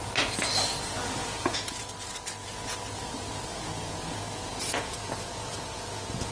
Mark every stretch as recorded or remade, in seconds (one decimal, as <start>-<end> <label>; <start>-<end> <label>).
0.0-1.2 recorded; 1.2-1.8 remade; 1.8-3.5 recorded; 3.5-6.3 remade